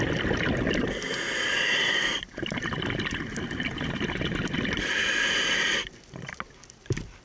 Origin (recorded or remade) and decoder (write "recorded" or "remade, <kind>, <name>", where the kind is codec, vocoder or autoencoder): recorded